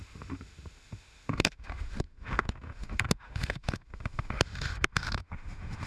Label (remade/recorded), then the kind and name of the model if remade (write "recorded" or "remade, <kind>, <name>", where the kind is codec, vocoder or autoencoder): remade, autoencoder, DAC-VAE